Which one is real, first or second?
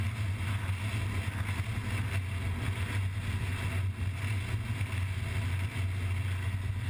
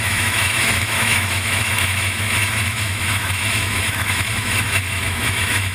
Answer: first